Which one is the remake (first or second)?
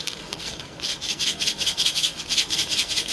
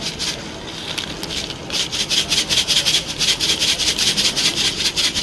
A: first